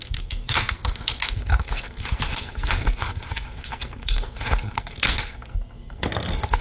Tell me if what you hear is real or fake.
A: fake